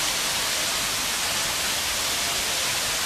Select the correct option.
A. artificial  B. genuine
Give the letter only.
B